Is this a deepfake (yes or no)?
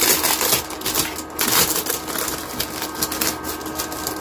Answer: no